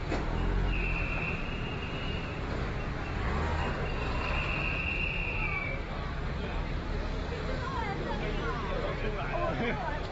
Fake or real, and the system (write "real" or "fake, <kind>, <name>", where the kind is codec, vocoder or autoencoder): real